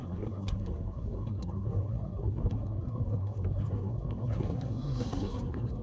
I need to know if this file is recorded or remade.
remade